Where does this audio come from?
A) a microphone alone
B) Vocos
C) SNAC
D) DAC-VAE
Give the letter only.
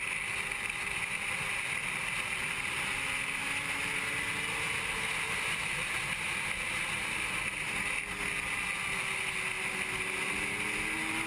A